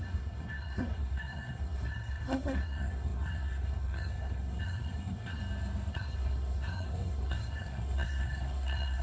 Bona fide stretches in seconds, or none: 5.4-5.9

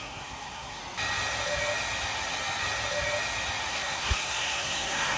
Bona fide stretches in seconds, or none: 0.8-3.7

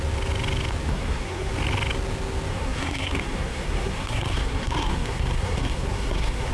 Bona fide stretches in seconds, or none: 0.0-0.9; 1.5-2.5

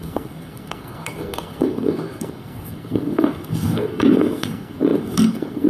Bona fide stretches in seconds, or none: none

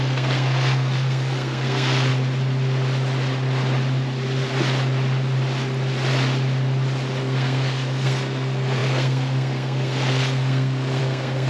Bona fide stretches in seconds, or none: 2.1-7.2

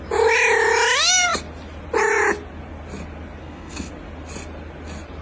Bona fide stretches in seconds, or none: 0.0-3.4; 3.9-5.2

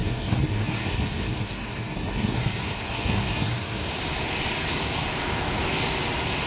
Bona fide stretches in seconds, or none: 3.9-6.5